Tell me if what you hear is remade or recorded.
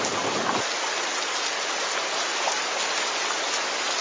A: recorded